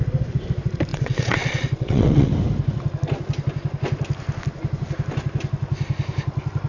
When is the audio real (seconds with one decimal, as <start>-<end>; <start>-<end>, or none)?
0.0-0.9; 2.3-6.7